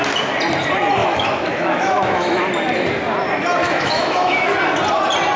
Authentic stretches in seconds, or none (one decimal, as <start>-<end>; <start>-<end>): 0.0-1.0; 2.4-3.6; 4.5-5.4